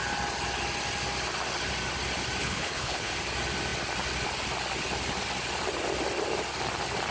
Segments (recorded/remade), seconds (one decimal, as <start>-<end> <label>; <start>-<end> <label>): 0.0-2.4 recorded; 2.4-3.1 remade; 3.1-7.1 recorded